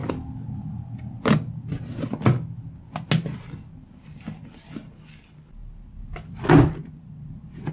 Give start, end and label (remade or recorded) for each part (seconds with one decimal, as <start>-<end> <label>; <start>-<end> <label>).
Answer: 0.0-5.6 recorded; 5.6-7.7 remade